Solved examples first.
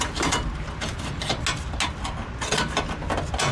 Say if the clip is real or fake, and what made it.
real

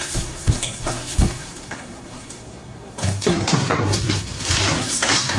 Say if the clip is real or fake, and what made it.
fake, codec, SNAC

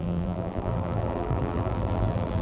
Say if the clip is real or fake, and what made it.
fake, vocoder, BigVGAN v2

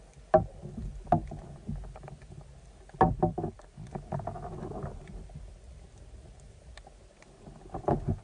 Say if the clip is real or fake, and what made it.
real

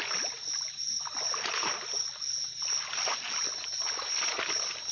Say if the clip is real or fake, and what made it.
real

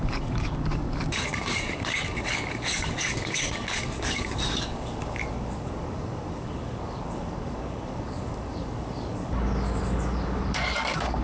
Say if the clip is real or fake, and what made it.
fake, codec, DAC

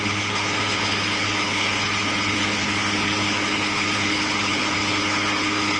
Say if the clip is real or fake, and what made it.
fake, codec, HILCodec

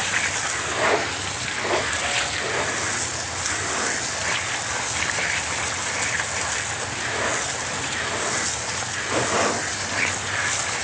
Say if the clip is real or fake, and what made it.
real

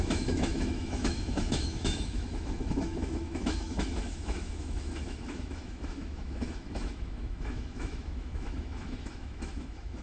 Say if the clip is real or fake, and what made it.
fake, autoencoder, DAC-VAE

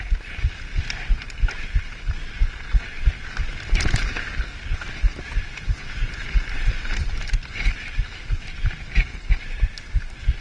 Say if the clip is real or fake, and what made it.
real